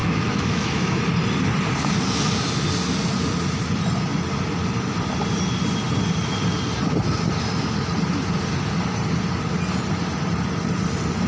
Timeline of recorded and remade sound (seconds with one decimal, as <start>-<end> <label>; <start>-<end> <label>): 0.0-1.0 remade; 1.0-11.3 recorded